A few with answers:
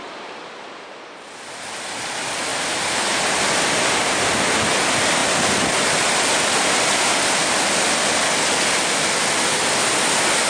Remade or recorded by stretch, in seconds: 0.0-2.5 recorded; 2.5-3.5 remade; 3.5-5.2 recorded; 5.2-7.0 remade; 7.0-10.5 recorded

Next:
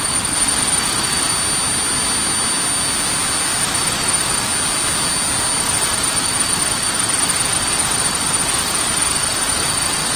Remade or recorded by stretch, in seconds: 0.0-1.3 remade; 1.3-3.6 recorded; 3.6-4.5 remade; 4.5-5.6 recorded; 5.6-10.2 remade

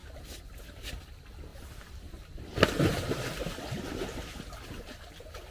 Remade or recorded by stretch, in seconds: 0.0-1.5 recorded; 1.5-4.8 remade; 4.8-5.5 recorded